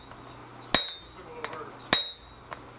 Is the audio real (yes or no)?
yes